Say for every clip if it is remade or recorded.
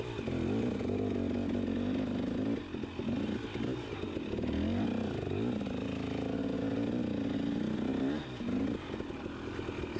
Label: recorded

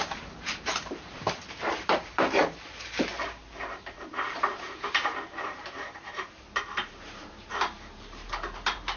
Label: remade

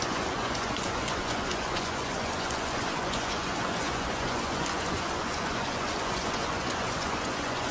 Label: remade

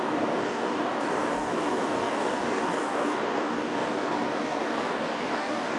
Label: remade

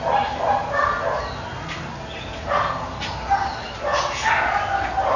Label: recorded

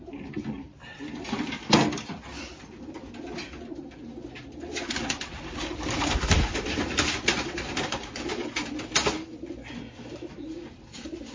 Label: recorded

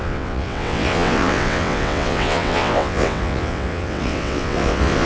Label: remade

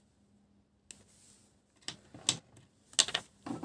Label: recorded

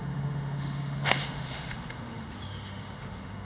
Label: remade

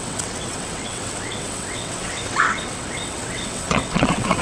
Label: remade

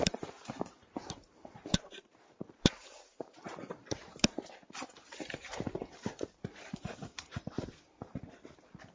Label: remade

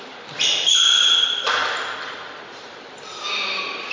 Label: remade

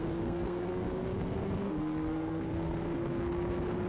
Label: remade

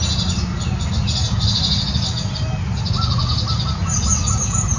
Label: recorded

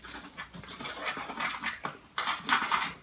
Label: recorded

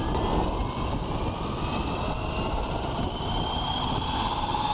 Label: remade